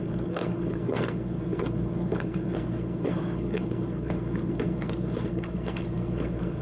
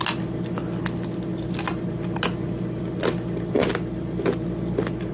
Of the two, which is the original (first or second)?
second